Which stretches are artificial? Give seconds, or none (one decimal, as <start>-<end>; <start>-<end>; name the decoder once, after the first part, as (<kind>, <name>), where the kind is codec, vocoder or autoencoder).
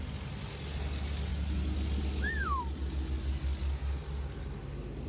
none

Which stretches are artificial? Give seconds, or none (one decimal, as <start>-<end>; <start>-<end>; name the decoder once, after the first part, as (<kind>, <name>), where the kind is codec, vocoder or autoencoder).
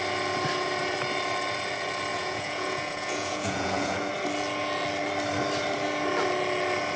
2.1-4.1 (vocoder, Vocos)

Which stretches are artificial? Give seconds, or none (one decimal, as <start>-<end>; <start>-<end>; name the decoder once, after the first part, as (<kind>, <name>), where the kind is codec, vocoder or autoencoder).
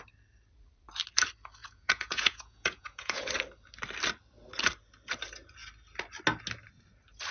1.6-3.3 (vocoder, Vocos)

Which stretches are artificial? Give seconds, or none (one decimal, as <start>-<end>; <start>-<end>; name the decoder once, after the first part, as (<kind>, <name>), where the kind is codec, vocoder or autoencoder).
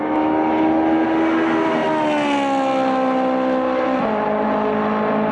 none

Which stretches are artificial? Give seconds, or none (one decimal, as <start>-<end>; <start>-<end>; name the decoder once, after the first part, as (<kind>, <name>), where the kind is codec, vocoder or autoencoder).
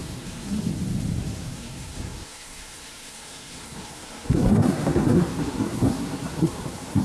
0.0-0.7 (codec, SNAC); 1.2-7.0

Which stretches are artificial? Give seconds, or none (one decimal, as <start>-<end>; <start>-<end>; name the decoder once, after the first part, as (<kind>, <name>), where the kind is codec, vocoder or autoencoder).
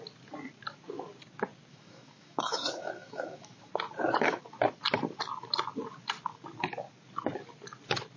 1.7-3.7 (autoencoder, DAC-VAE)